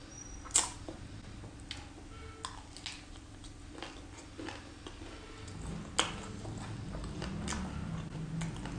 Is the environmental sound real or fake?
real